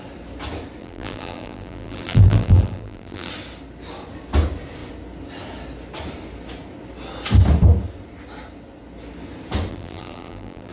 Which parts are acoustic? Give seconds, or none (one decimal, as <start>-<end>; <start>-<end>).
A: 0.0-0.8; 3.3-9.7